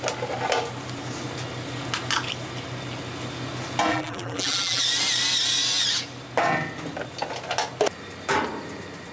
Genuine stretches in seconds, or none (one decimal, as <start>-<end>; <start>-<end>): 0.0-3.9; 4.8-9.1